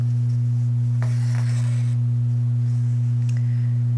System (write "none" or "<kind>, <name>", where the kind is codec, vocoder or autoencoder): none